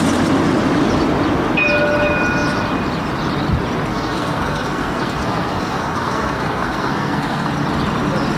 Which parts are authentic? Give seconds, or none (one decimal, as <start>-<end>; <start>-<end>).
0.0-3.9; 7.5-8.4